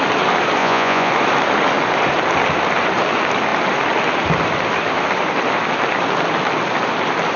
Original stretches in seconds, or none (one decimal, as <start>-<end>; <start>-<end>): 0.0-0.6; 1.1-7.4